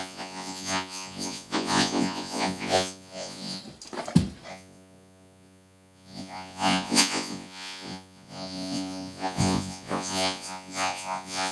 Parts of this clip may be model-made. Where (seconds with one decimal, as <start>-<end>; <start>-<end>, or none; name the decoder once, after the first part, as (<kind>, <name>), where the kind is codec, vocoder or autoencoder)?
0.0-3.6 (vocoder, Vocos); 4.5-11.5